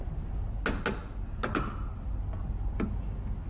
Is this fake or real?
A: real